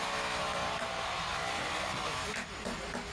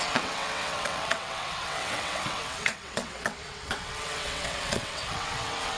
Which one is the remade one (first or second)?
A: second